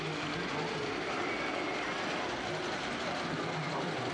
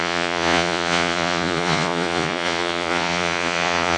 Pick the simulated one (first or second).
second